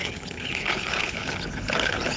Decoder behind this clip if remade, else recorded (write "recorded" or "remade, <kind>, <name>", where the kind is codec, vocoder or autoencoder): remade, codec, HILCodec